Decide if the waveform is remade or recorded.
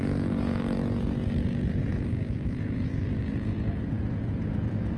remade